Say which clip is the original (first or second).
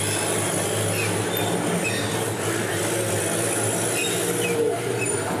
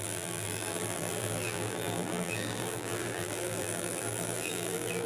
first